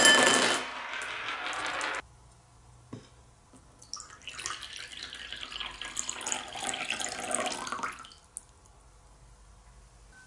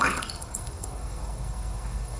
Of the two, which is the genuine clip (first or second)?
first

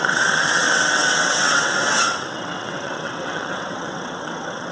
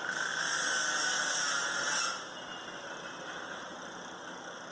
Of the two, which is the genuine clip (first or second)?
second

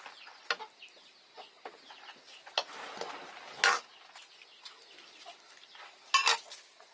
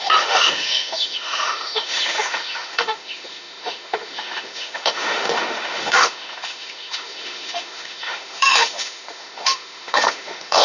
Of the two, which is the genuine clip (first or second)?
first